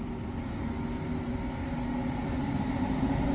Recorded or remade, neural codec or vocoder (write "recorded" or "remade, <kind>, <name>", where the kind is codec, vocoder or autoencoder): recorded